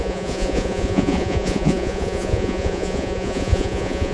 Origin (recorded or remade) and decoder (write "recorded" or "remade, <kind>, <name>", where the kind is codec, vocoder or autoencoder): remade, vocoder, Vocos